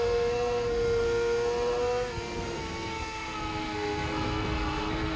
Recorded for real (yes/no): no